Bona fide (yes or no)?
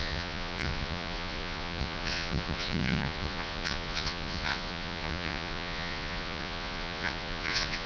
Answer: no